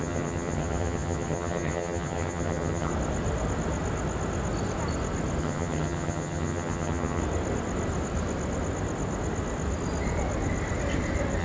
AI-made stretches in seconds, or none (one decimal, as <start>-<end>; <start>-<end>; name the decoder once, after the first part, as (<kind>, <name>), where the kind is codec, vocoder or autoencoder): 0.0-2.9 (vocoder, HiFi-GAN); 5.4-7.2